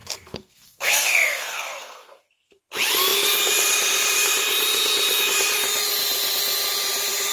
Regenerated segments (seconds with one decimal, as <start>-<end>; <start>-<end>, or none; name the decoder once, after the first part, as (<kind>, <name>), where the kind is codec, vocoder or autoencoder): 0.0-2.6 (codec, SNAC)